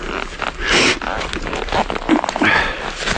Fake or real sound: real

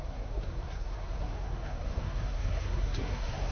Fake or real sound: fake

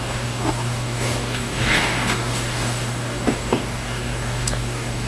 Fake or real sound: fake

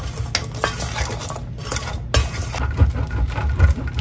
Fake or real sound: real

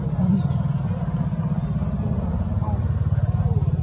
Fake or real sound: real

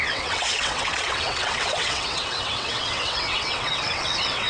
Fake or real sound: fake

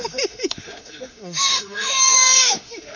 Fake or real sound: fake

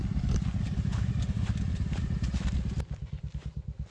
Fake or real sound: real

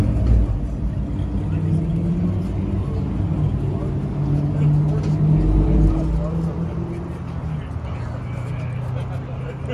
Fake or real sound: real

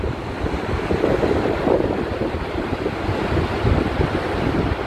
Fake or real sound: real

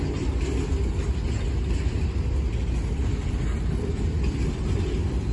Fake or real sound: real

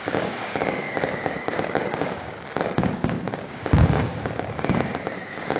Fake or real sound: fake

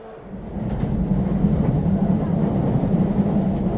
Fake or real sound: real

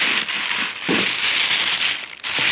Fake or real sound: real